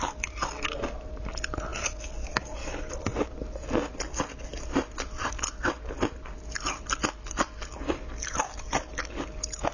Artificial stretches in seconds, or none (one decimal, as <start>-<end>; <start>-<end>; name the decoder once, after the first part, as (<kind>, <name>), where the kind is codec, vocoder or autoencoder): none